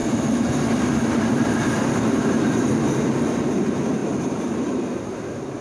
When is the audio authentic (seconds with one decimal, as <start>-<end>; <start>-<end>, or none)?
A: 3.4-4.0; 5.0-5.6